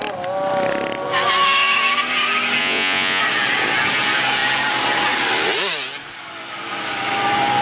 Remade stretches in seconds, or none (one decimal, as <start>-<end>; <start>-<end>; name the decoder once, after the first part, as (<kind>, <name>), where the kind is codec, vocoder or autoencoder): 2.6-3.2 (vocoder, Vocos)